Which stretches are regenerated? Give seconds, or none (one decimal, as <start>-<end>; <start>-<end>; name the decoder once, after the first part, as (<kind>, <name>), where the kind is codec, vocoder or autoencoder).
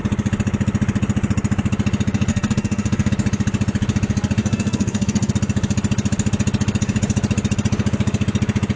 2.3-3.1 (codec, SNAC); 4.4-5.3